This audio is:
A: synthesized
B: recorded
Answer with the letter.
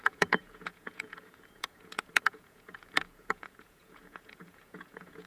A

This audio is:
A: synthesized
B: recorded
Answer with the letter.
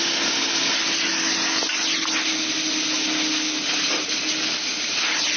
B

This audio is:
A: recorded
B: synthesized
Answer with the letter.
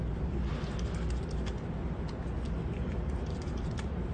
A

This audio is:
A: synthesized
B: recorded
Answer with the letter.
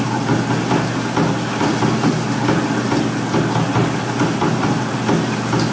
B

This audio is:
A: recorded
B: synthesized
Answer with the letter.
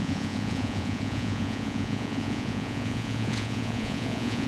B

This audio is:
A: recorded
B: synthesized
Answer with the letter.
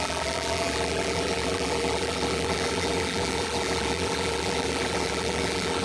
B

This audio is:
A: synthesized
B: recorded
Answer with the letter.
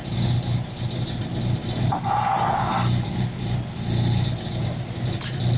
B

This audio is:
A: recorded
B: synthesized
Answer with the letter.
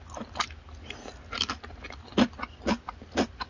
A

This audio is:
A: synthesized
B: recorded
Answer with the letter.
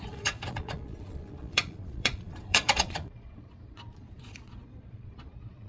A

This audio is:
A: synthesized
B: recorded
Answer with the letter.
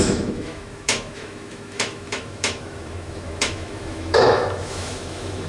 A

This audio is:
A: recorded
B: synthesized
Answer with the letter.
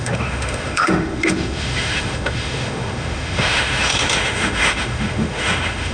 B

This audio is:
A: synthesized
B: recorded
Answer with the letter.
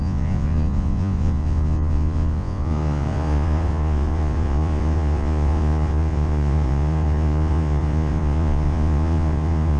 A